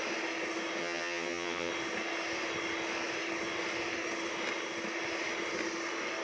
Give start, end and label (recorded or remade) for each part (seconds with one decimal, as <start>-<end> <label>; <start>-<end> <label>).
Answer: 0.0-0.8 recorded; 0.8-1.7 remade; 1.7-6.2 recorded